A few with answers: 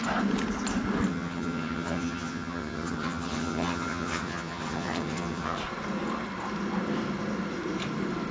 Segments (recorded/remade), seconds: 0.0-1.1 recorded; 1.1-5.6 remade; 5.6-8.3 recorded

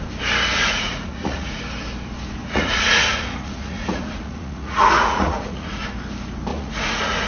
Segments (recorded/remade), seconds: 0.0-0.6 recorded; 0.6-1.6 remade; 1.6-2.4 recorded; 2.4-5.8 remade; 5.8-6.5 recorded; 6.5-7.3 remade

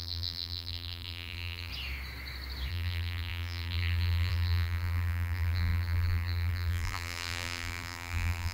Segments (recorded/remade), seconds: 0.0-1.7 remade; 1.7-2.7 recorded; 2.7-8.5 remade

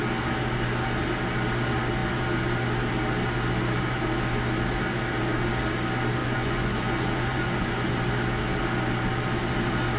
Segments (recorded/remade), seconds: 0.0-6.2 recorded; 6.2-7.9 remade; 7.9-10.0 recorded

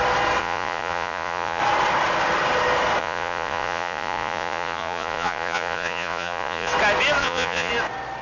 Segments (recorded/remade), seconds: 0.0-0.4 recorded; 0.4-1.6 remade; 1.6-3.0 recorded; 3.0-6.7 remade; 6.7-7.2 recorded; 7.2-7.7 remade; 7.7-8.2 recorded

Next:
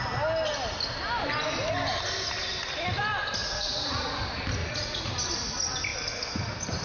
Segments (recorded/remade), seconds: 0.0-3.4 recorded; 3.4-4.0 remade; 4.0-4.6 recorded; 4.6-5.1 remade; 5.1-6.8 recorded